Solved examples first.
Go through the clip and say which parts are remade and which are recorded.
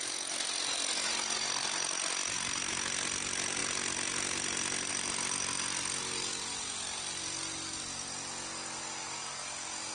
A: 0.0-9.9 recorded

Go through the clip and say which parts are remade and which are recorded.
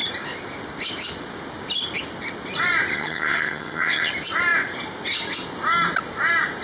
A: 0.0-2.9 recorded; 2.9-4.1 remade; 4.1-6.6 recorded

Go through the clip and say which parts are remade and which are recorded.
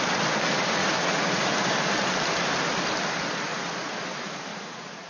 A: 0.0-0.8 recorded; 0.8-1.4 remade; 1.4-3.5 recorded; 3.5-4.1 remade; 4.1-4.5 recorded; 4.5-5.1 remade